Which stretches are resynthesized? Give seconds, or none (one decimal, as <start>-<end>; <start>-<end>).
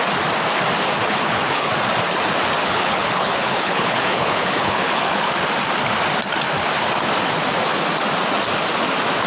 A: 1.1-1.7; 2.6-5.3